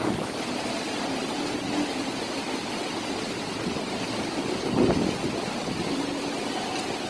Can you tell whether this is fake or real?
real